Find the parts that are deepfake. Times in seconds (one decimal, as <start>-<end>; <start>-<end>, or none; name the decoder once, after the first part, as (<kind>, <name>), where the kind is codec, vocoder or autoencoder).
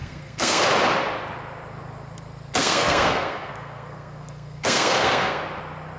0.0-0.6 (codec, SNAC); 2.6-5.4